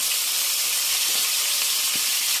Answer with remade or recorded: recorded